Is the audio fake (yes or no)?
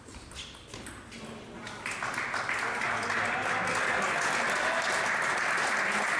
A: no